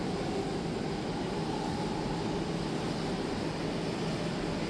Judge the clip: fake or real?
real